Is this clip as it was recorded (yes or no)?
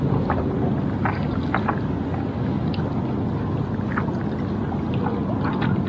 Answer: yes